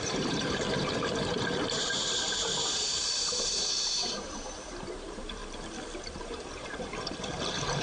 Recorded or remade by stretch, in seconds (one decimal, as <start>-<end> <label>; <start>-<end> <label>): 0.0-5.4 remade; 5.4-6.2 recorded; 6.2-7.8 remade